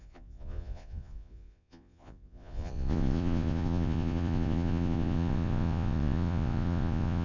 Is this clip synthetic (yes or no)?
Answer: yes